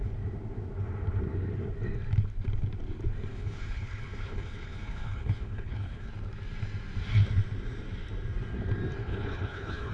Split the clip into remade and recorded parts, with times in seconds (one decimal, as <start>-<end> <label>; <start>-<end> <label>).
0.0-3.3 recorded; 3.3-6.1 remade; 6.1-9.0 recorded; 9.0-9.9 remade